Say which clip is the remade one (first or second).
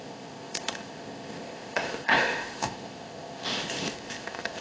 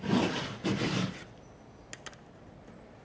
first